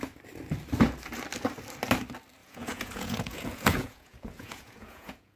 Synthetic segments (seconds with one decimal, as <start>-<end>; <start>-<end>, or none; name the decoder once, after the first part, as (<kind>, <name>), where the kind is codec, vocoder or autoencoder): 2.4-5.4 (vocoder, Vocos)